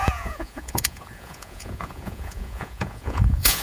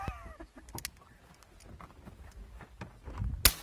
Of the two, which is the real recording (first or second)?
second